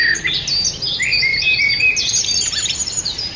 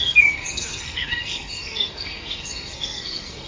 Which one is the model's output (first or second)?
second